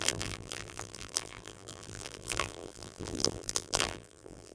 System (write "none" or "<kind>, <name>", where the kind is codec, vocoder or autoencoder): vocoder, BigVGAN v2